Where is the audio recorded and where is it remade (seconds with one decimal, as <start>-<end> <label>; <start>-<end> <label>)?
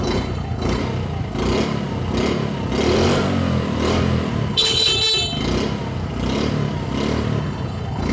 0.0-0.8 remade; 0.8-4.5 recorded; 4.5-4.9 remade; 4.9-7.4 recorded; 7.4-8.1 remade